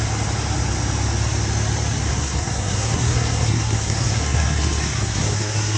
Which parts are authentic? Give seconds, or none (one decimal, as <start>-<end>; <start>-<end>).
0.0-2.1